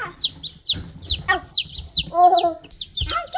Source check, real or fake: real